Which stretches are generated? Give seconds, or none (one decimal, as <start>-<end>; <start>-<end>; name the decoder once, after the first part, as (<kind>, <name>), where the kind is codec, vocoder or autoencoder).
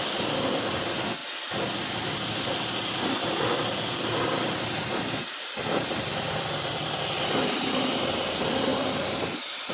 0.0-1.2 (vocoder, BigVGAN v2); 3.2-9.7